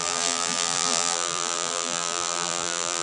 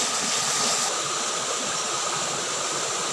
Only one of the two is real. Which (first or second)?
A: second